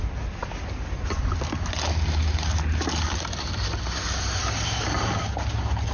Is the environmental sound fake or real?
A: real